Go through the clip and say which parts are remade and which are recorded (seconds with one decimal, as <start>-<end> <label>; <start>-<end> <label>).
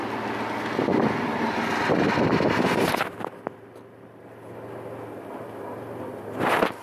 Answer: 0.0-6.8 recorded